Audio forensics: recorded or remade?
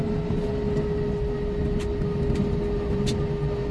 recorded